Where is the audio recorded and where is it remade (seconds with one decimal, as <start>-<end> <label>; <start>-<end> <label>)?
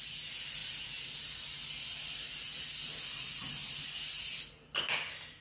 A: 0.0-5.4 recorded